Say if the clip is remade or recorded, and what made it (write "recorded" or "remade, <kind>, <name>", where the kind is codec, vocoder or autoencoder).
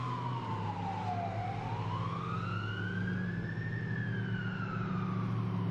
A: recorded